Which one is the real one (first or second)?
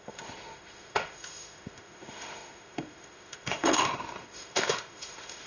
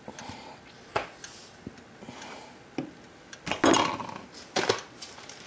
second